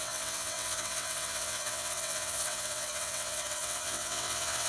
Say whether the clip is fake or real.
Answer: fake